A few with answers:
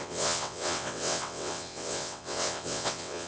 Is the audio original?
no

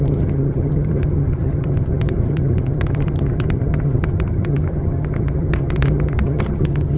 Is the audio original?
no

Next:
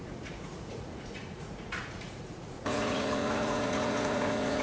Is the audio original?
no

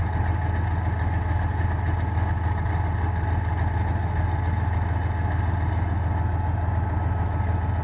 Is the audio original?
yes